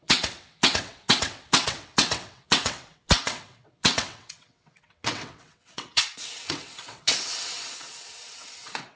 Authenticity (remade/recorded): remade